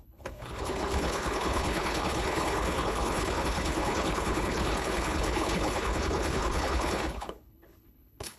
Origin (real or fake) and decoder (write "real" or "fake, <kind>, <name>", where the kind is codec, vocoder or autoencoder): fake, codec, HILCodec